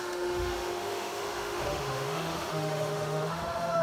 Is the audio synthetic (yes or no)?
yes